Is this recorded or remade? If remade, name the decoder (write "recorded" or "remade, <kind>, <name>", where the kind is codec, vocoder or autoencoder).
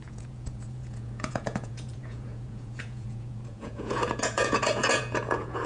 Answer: remade, vocoder, Vocos